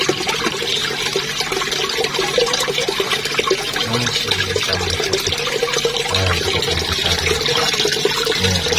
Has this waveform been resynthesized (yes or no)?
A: no